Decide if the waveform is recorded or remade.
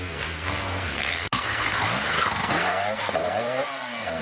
remade